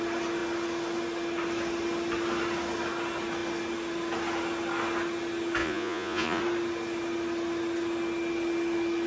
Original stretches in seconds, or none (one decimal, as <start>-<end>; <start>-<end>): 0.0-5.6; 6.4-9.1